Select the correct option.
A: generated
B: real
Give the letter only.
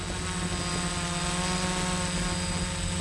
B